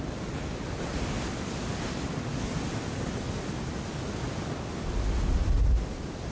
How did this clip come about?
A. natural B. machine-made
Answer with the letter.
A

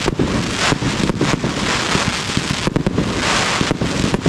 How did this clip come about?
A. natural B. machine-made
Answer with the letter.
A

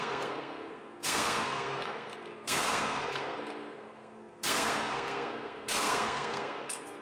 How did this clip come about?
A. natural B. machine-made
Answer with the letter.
B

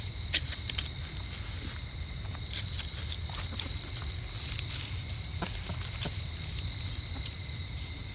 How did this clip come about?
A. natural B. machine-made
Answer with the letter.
A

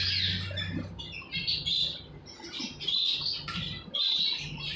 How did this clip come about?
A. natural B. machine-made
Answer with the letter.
A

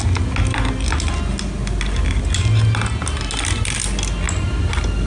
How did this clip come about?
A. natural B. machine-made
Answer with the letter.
A